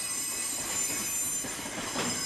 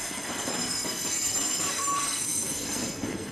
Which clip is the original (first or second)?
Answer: first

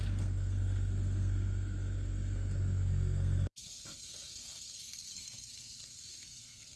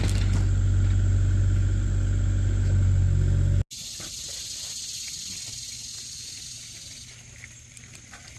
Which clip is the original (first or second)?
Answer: second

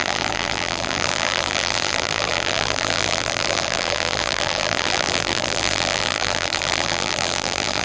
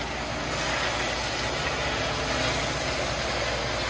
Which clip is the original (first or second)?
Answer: second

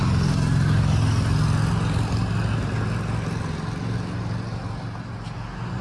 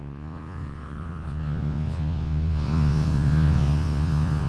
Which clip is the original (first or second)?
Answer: first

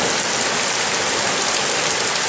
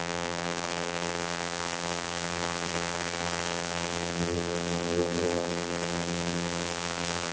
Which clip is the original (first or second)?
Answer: first